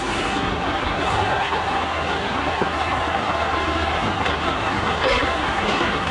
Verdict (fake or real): fake